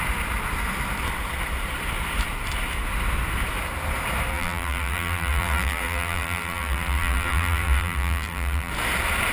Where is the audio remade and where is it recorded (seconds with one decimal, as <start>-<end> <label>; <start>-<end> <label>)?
0.0-4.3 recorded; 4.3-8.7 remade; 8.7-9.3 recorded